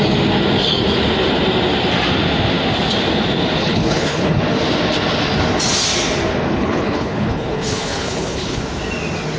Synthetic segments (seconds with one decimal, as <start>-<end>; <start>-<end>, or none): 3.6-4.4; 6.5-8.6